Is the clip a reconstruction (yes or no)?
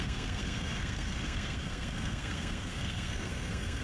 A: yes